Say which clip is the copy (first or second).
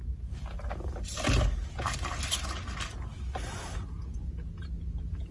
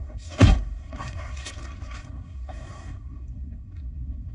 second